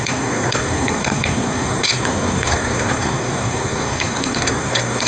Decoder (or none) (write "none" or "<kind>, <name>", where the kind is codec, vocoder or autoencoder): codec, SNAC